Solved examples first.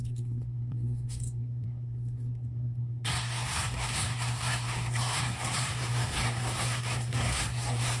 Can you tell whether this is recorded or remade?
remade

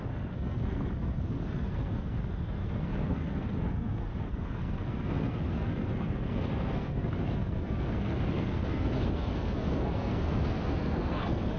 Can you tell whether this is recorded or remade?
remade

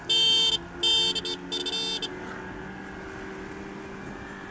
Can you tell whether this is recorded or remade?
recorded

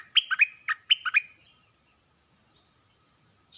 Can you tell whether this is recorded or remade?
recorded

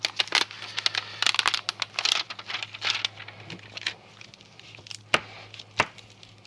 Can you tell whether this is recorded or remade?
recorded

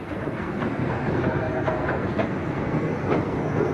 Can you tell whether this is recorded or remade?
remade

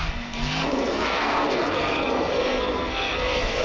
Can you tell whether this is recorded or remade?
remade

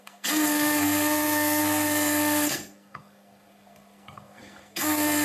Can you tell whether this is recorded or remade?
remade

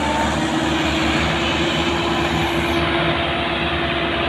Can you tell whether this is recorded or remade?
recorded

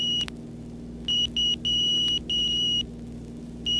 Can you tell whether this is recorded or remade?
recorded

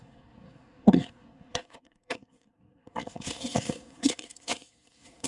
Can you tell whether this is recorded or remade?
remade